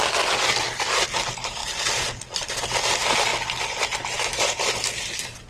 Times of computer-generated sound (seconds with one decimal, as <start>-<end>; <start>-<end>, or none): none